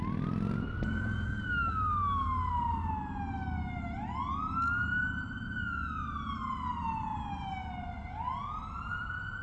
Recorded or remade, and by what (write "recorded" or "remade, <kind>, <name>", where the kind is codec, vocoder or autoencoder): recorded